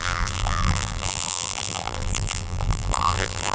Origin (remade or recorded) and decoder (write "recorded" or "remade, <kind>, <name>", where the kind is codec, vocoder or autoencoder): remade, vocoder, BigVGAN v2